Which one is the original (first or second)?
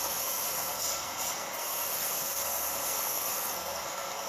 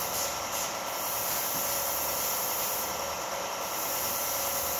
second